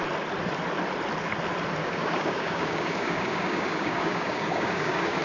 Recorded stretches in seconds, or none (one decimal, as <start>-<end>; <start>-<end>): 0.0-1.8